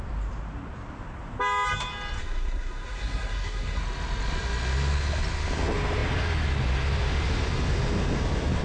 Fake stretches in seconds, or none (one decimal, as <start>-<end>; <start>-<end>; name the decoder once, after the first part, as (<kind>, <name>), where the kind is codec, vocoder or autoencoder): 2.2-3.8 (codec, SNAC)

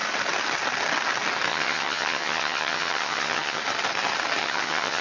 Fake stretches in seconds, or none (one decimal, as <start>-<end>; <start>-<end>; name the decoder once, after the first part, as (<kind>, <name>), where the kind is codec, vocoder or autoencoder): 1.5-3.6 (vocoder, HiFi-GAN); 4.4-5.0